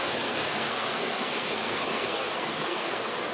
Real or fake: fake